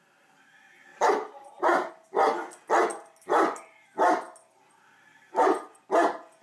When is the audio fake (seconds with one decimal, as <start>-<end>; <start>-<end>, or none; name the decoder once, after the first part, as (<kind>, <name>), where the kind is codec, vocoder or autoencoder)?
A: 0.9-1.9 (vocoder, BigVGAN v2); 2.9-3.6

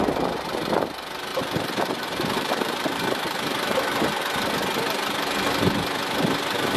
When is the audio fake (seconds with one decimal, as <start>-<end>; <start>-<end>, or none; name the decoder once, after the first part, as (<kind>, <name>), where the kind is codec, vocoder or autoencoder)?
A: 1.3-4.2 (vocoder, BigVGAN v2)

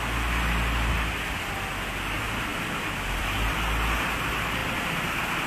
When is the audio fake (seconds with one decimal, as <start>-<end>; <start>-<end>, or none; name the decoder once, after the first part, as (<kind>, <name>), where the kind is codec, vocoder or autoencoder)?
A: none